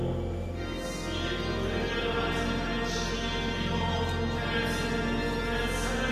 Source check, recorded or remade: recorded